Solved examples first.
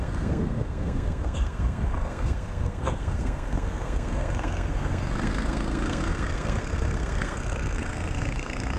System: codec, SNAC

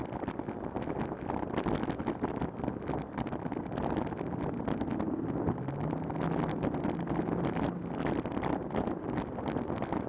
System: none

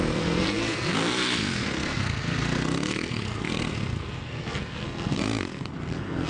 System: codec, SNAC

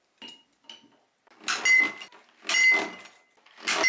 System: none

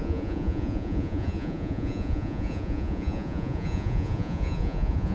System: vocoder, Vocos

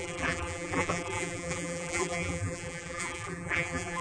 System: vocoder, BigVGAN v2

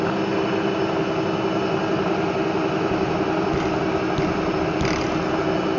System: none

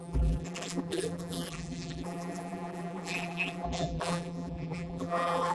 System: vocoder, BigVGAN v2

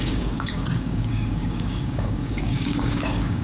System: codec, DAC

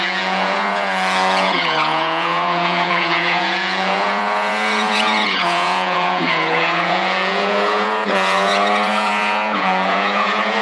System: vocoder, Vocos